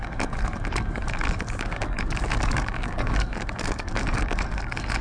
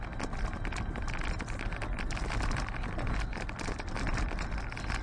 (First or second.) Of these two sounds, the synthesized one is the first